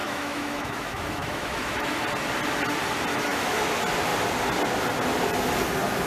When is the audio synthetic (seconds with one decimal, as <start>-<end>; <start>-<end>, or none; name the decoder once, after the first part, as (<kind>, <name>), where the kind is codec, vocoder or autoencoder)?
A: 0.0-2.0 (autoencoder, DAC-VAE); 3.1-3.6